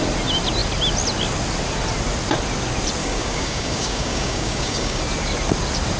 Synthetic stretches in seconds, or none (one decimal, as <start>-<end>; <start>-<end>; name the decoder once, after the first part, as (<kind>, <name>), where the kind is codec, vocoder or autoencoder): 3.0-5.0 (codec, DAC)